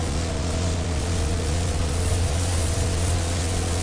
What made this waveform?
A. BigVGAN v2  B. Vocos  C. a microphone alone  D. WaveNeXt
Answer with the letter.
B